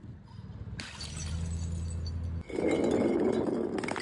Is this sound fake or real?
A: real